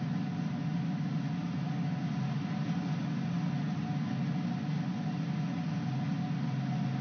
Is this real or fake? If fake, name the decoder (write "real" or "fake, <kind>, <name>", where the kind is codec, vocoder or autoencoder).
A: real